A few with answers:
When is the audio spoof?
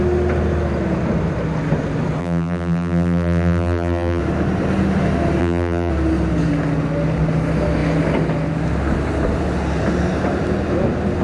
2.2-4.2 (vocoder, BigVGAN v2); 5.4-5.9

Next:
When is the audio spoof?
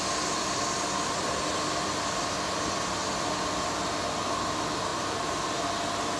4.9-5.6 (vocoder, BigVGAN v2)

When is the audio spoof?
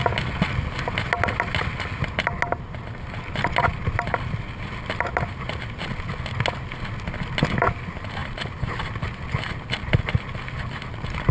none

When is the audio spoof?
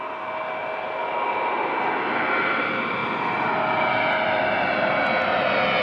none